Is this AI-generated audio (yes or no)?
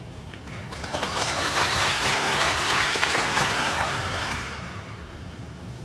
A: yes